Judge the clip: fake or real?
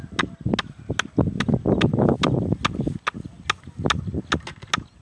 real